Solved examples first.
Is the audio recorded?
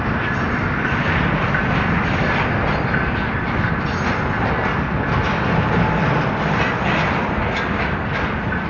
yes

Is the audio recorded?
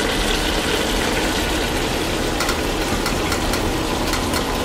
yes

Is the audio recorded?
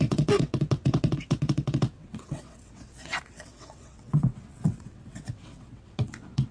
no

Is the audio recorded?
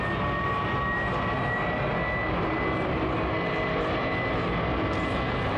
yes